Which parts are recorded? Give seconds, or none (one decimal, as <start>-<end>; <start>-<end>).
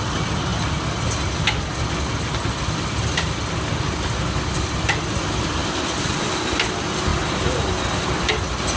0.0-8.8